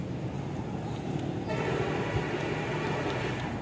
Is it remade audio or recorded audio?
recorded